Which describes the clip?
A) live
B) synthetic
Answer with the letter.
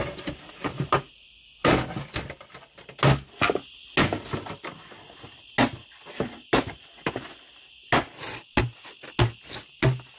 A